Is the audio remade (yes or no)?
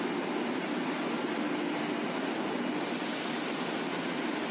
no